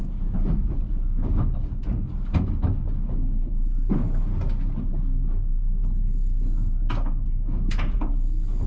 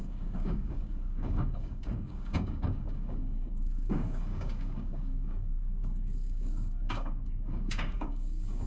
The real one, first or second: first